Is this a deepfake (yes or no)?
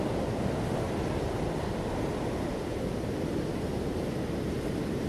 no